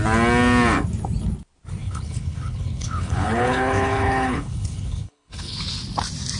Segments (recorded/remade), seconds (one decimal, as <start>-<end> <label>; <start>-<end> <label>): 0.0-1.8 recorded; 1.8-5.6 remade; 5.6-6.4 recorded